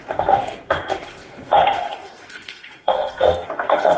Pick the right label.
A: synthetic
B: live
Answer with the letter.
A